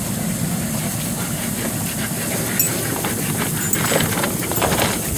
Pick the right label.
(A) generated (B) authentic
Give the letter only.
B